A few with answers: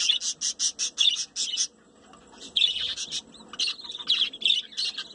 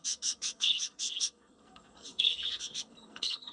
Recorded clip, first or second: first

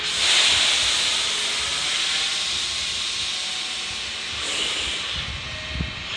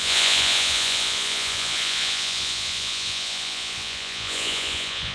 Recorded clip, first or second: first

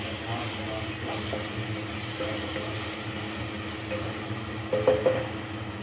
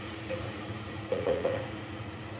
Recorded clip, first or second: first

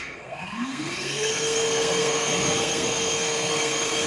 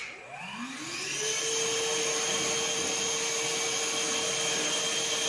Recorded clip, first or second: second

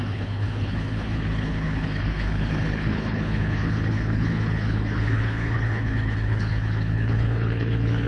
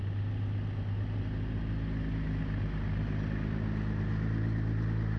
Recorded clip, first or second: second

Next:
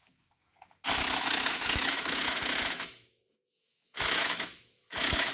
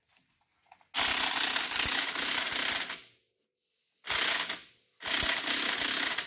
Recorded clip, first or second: second